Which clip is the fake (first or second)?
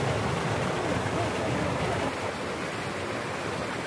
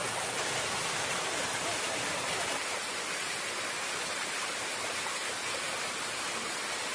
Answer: second